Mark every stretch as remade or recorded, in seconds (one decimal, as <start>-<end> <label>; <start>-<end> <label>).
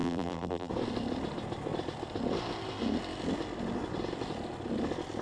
0.0-0.7 remade; 0.7-5.2 recorded